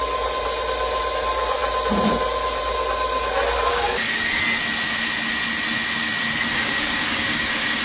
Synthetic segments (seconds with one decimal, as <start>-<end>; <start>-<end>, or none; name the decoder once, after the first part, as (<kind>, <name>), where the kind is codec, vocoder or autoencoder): 3.7-4.4 (codec, DAC); 6.5-7.8